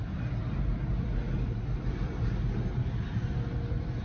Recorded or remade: recorded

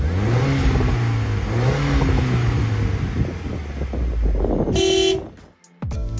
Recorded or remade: recorded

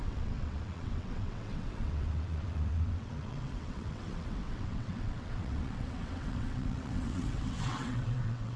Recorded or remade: remade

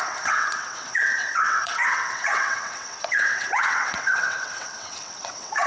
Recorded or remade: remade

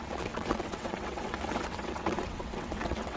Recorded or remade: remade